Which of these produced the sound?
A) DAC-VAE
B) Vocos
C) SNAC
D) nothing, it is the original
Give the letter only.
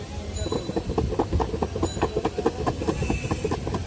D